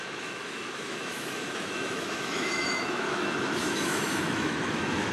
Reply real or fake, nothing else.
fake